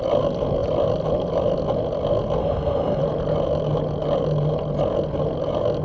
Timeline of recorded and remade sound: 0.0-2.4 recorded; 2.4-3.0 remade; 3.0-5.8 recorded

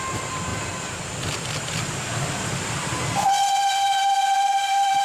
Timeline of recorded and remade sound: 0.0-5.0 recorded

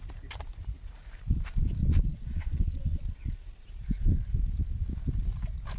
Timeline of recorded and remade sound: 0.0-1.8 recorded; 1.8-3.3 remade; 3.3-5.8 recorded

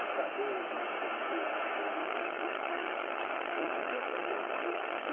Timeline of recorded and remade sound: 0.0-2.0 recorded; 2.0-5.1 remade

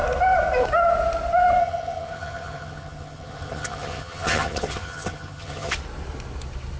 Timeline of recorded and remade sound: 0.0-1.6 recorded; 1.6-5.7 remade; 5.7-6.8 recorded

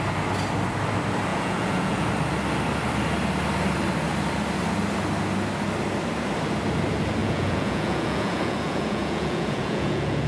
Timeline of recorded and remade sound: 0.0-1.3 recorded; 1.3-2.1 remade; 2.1-7.2 recorded; 7.2-10.3 remade